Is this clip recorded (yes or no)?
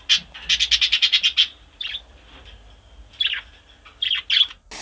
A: yes